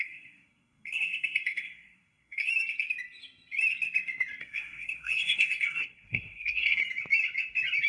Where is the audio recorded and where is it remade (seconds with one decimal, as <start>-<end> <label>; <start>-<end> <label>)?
0.0-2.5 remade; 2.5-4.4 recorded; 4.4-6.8 remade; 6.8-7.9 recorded